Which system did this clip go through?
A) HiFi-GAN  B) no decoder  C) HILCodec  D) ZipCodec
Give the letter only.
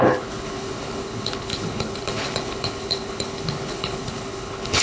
C